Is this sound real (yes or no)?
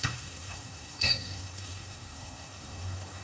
no